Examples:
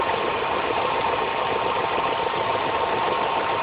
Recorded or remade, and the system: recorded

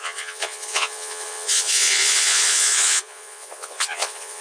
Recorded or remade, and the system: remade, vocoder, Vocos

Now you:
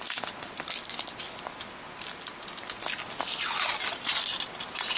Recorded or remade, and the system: recorded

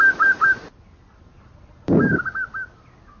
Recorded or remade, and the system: recorded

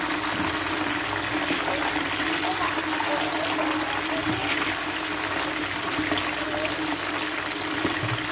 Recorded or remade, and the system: recorded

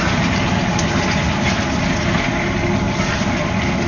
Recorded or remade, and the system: recorded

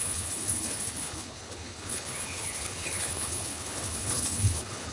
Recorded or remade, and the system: remade, codec, HILCodec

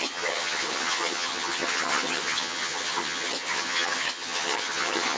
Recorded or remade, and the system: remade, vocoder, HiFi-GAN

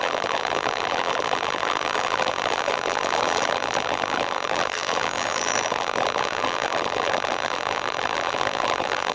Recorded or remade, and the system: remade, vocoder, BigVGAN v2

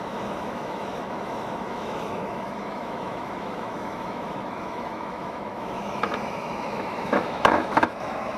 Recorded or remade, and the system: remade, autoencoder, DAC-VAE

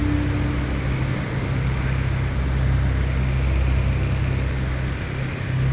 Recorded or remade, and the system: recorded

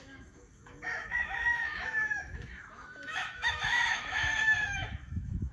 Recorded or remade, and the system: remade, autoencoder, DAC-VAE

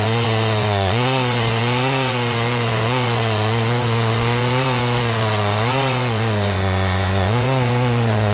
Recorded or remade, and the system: remade, vocoder, Vocos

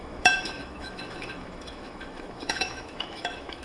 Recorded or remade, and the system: remade, autoencoder, DAC-VAE